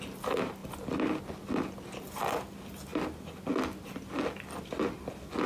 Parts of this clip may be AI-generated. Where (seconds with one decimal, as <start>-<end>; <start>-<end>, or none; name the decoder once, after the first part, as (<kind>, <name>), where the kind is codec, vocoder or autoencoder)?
none